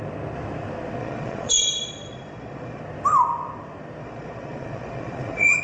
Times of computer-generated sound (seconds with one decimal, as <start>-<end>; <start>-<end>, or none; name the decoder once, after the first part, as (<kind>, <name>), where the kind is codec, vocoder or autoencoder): 1.0-2.8 (vocoder, Vocos); 4.0-5.6